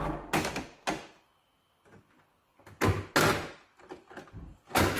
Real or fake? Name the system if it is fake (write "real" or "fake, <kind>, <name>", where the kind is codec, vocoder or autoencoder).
real